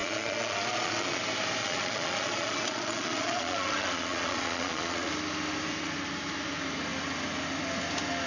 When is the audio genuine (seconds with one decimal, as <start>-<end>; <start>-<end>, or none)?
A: 1.2-1.6; 5.1-8.3